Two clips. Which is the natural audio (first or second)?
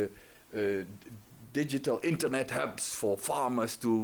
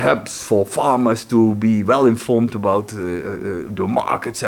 first